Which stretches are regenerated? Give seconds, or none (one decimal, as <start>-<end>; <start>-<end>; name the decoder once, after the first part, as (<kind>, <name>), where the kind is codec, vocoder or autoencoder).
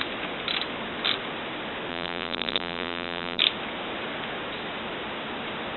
1.9-3.4 (vocoder, BigVGAN v2)